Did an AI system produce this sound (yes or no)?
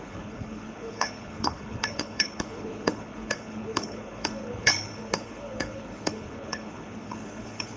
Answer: yes